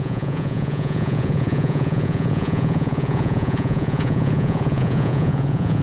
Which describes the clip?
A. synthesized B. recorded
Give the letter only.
A